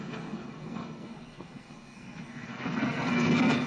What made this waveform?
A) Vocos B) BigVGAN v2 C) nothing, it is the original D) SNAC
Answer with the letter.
D